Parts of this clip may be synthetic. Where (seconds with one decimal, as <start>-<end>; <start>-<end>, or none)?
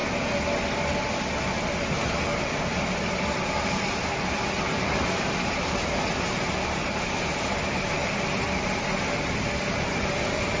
none